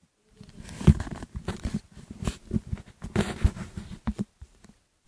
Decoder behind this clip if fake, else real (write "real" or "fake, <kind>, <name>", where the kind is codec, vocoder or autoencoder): real